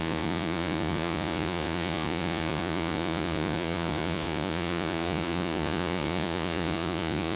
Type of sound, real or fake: fake